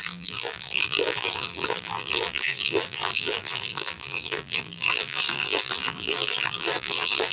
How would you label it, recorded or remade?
remade